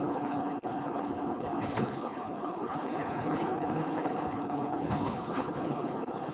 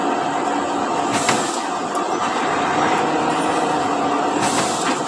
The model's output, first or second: first